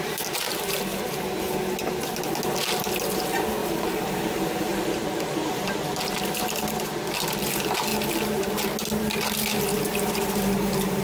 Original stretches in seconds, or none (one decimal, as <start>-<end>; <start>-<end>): 0.0-3.6; 6.0-11.0